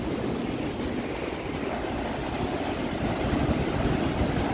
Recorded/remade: recorded